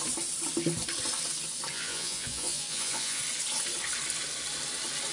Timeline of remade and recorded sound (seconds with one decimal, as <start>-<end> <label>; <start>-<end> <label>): 0.0-1.7 recorded; 1.7-3.2 remade; 3.2-5.1 recorded